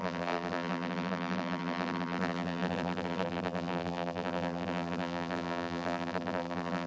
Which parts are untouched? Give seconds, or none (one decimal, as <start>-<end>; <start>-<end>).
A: none